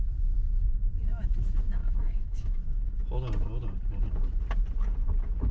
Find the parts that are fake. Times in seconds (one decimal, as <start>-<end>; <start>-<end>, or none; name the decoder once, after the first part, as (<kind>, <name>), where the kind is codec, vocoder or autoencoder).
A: 1.8-2.6 (autoencoder, DAC-VAE)